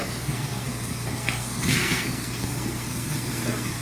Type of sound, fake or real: fake